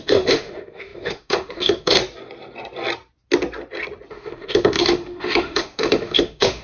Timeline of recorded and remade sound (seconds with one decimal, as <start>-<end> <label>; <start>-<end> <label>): 0.0-2.0 remade; 2.0-4.1 recorded; 4.1-6.6 remade